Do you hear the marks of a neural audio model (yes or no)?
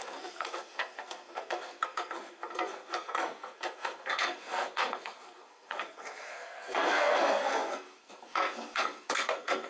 yes